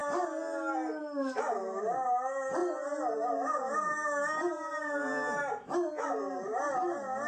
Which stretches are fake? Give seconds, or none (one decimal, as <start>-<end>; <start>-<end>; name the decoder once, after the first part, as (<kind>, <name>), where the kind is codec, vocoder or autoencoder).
1.0-5.4 (vocoder, BigVGAN v2)